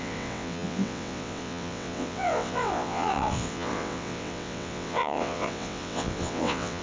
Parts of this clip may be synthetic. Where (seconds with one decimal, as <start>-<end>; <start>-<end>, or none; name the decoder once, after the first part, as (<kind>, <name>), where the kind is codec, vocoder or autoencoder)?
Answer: 0.0-6.8 (vocoder, WaveNeXt)